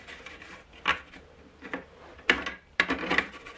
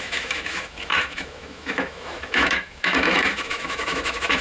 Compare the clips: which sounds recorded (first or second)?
first